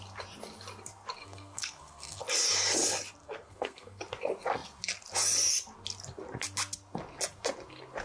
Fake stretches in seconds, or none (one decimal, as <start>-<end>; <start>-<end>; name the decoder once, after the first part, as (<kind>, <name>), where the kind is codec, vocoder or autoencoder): 1.2-2.2 (codec, SNAC); 3.2-4.0